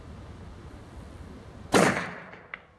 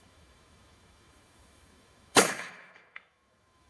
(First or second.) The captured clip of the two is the first